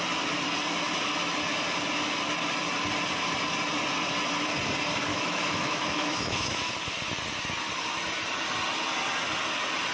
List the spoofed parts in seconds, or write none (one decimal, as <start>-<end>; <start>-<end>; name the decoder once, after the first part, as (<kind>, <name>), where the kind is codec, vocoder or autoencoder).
5.1-6.7 (autoencoder, DAC-VAE)